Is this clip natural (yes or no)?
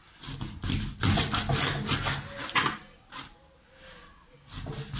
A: yes